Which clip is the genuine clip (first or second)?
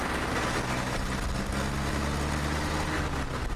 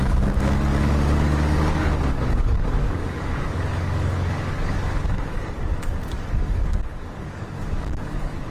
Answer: first